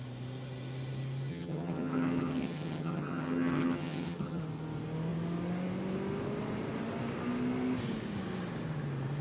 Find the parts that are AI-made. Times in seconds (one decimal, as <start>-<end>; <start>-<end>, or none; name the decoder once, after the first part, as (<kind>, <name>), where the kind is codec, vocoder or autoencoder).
1.3-4.4 (vocoder, HiFi-GAN)